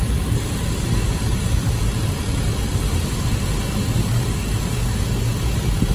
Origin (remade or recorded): recorded